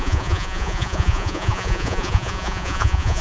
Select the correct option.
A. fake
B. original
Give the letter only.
A